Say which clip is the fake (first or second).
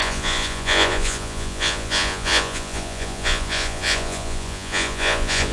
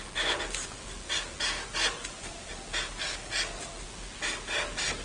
first